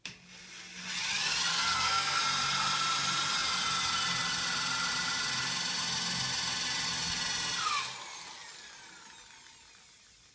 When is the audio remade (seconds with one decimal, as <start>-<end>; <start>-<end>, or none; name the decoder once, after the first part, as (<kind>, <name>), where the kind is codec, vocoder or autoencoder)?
1.5-2.2 (codec, SNAC)